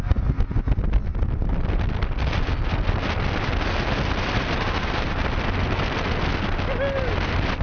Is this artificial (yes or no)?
no